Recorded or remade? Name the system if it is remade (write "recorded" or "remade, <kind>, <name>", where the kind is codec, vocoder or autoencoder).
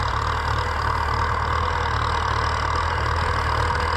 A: recorded